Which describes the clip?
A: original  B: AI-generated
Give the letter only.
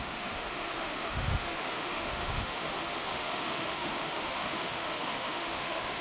B